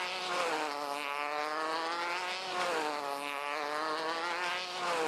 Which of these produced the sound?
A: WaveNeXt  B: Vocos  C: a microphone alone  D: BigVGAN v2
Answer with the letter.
C